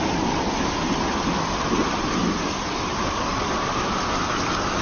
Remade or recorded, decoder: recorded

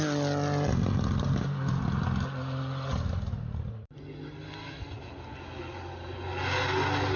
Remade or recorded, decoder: recorded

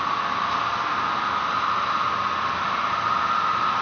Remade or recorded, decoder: recorded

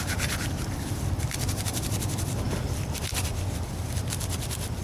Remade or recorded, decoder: remade, vocoder, BigVGAN v2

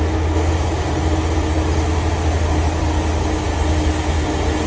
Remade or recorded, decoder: recorded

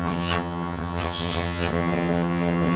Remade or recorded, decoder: remade, vocoder, HiFi-GAN